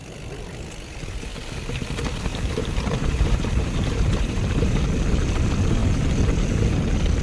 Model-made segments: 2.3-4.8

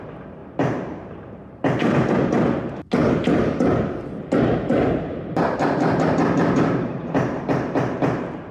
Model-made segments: 0.4-2.1; 4.7-7.4

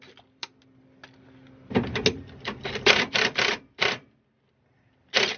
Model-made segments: none

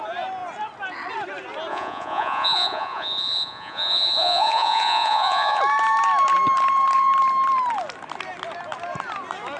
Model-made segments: 1.7-5.6

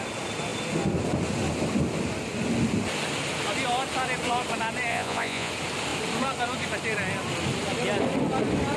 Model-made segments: 4.9-5.5